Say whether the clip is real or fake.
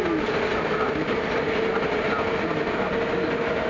real